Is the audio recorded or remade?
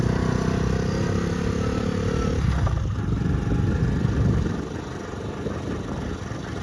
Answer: recorded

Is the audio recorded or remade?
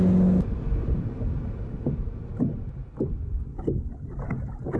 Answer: recorded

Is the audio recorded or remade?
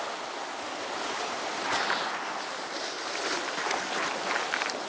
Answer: recorded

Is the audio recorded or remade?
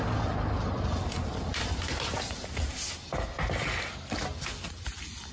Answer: recorded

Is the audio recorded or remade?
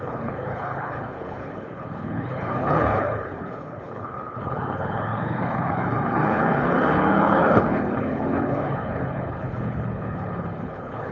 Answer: remade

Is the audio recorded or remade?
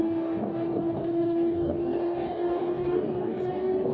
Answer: remade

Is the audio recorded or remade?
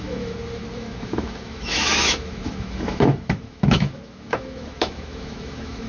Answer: remade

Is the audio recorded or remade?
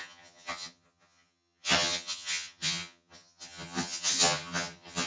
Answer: remade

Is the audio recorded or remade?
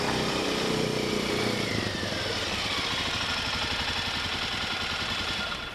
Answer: remade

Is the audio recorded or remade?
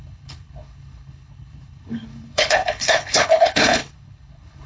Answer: remade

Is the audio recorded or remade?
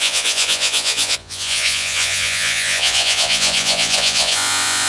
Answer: remade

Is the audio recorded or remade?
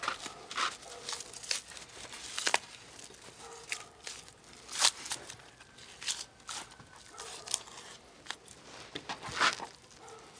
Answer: recorded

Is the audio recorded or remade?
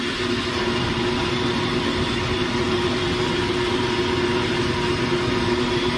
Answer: recorded